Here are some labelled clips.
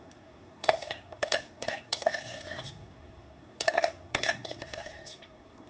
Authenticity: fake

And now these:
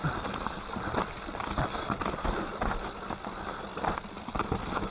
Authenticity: real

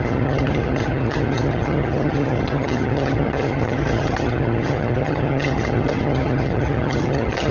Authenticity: fake